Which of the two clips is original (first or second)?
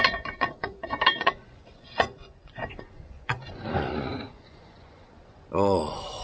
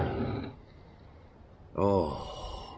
second